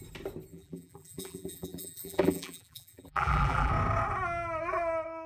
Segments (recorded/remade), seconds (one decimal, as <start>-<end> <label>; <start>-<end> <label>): 0.0-0.5 recorded; 0.5-3.7 remade; 3.7-5.3 recorded